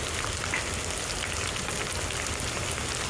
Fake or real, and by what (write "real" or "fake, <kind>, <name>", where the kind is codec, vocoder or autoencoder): real